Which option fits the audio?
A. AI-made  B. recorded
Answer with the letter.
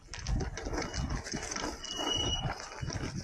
B